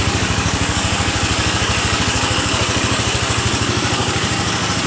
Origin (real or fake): fake